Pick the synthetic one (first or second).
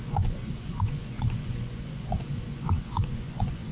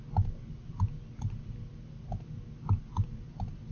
first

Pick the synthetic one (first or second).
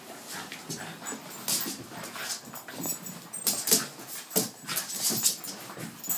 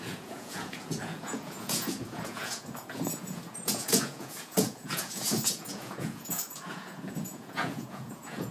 second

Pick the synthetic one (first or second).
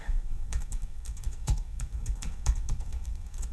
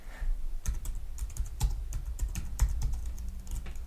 first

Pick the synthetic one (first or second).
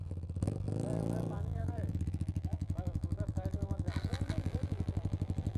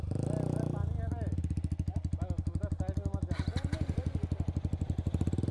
first